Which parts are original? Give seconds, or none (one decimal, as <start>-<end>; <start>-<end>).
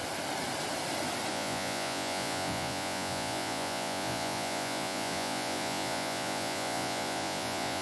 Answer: 0.0-1.3